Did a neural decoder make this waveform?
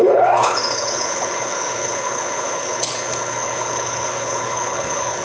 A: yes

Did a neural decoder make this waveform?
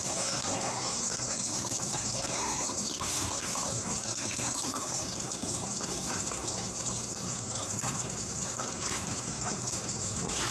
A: yes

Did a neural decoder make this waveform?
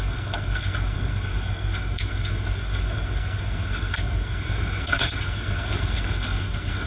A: yes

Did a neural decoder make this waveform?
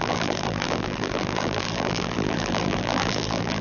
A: yes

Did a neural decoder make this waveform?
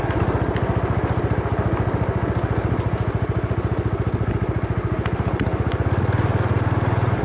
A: no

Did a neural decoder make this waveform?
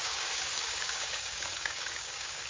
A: yes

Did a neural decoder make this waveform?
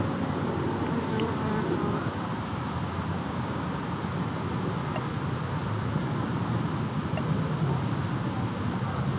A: no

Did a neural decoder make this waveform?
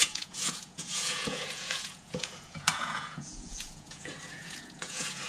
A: yes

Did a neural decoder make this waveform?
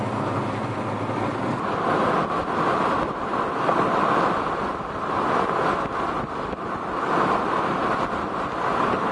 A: no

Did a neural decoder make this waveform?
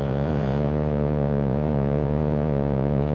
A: yes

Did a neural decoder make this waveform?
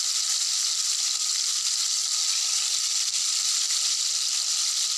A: no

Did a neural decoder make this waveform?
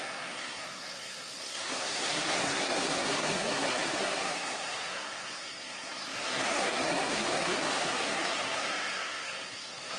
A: yes